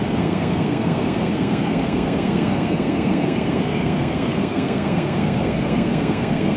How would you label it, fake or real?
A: fake